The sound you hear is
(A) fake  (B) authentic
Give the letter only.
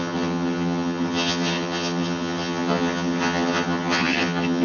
A